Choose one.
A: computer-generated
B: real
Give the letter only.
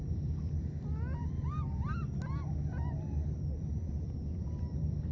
B